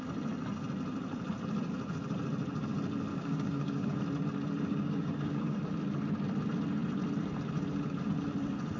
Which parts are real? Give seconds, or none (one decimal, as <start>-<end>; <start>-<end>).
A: 0.0-3.1; 4.0-4.7; 5.6-8.8